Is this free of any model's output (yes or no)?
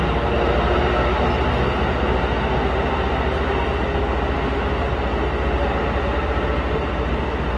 yes